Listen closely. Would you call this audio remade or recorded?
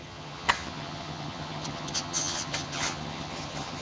remade